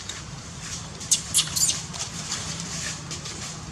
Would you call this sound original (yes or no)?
no